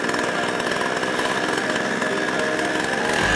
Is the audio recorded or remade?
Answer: recorded